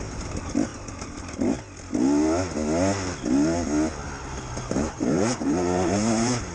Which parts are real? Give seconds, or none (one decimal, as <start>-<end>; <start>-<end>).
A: 0.7-4.6